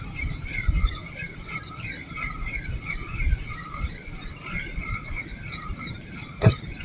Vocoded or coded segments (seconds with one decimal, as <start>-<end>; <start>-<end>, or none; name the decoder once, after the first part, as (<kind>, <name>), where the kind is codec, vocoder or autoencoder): 0.0-6.8 (vocoder, BigVGAN v2)